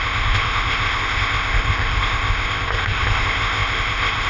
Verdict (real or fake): fake